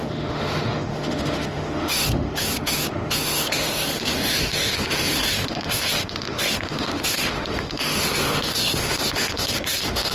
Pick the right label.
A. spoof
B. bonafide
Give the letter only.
A